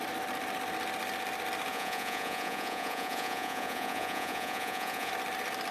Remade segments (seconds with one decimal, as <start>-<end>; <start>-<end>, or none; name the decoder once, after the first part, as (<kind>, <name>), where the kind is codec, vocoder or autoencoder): 1.7-5.1 (vocoder, Vocos)